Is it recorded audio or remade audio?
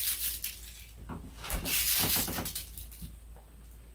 recorded